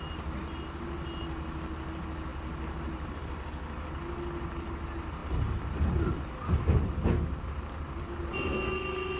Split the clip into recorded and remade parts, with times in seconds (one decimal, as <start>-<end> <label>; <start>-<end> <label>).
0.0-9.2 recorded